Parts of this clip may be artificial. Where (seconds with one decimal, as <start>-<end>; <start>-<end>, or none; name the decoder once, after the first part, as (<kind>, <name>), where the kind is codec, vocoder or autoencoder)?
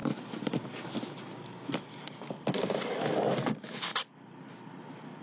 none